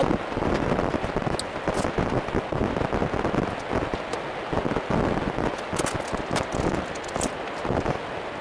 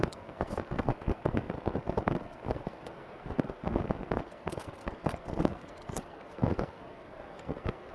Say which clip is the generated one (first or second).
second